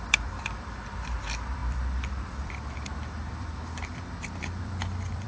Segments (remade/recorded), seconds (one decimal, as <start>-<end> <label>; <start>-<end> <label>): 0.0-5.3 remade